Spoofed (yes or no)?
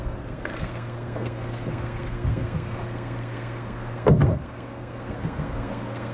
yes